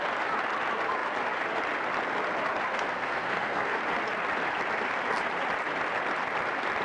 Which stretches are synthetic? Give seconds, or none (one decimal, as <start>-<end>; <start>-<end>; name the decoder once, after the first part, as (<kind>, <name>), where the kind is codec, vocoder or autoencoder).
2.7-3.8 (codec, SNAC)